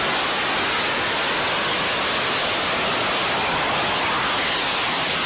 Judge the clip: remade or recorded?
recorded